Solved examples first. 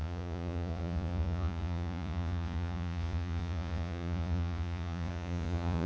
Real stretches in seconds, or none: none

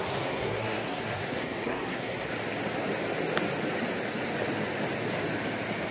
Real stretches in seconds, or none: 2.3-5.9